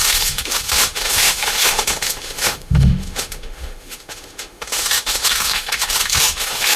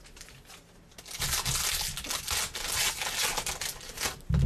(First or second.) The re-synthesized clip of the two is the first